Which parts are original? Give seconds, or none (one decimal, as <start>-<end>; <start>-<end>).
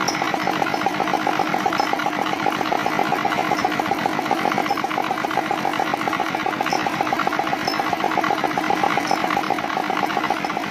0.0-10.7